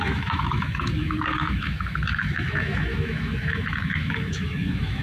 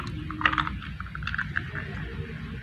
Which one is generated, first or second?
first